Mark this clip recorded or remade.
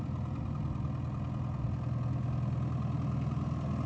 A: recorded